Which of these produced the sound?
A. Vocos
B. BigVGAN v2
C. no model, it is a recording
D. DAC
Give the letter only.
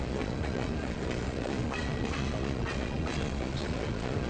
A